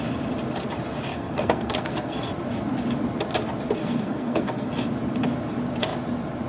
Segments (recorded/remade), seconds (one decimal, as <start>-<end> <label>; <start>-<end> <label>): 0.0-1.1 recorded; 1.1-2.3 remade; 2.3-3.8 recorded; 3.8-4.7 remade; 4.7-6.5 recorded